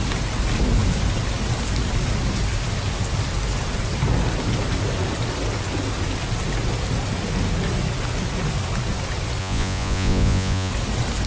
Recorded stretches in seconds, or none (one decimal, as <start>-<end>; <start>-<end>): 0.0-9.4; 10.7-11.3